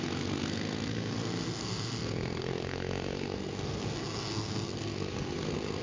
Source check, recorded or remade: remade